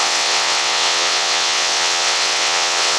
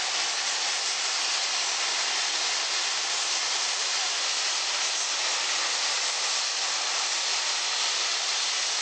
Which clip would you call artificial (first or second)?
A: first